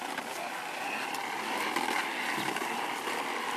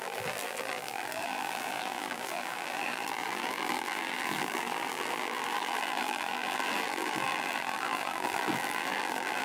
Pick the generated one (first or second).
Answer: second